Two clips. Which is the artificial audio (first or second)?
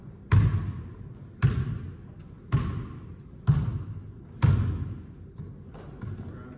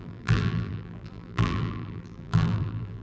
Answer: second